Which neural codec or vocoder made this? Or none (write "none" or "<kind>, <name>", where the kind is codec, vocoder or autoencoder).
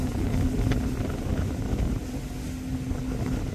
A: none